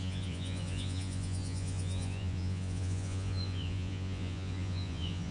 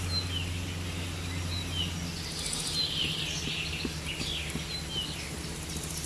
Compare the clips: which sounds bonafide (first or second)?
second